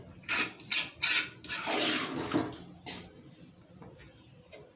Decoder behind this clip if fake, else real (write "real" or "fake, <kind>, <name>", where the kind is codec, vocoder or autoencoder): real